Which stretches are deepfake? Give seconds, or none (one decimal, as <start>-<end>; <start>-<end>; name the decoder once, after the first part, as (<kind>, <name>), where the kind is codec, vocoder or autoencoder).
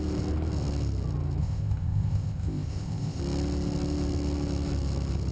1.4-3.2 (codec, ZipCodec)